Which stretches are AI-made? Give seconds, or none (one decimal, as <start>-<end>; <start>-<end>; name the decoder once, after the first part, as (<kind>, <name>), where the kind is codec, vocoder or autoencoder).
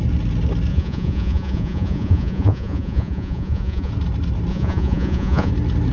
0.7-3.9 (vocoder, Vocos); 4.5-5.5